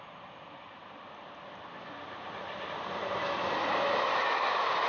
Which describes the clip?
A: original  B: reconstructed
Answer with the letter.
A